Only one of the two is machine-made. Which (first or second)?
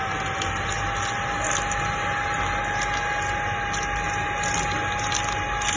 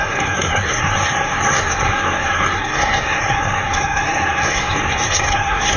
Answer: second